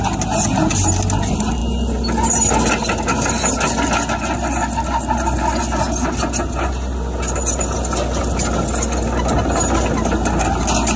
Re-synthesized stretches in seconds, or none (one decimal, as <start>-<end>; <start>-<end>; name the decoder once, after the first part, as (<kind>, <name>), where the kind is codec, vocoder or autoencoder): none